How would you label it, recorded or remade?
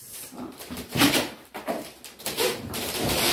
remade